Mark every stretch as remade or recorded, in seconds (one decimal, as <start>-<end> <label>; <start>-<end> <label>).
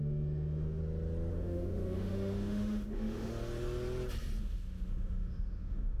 0.0-0.8 remade; 0.8-1.3 recorded; 1.3-3.3 remade; 3.3-4.4 recorded; 4.4-6.0 remade